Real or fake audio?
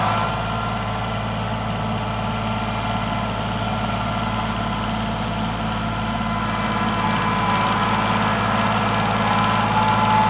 real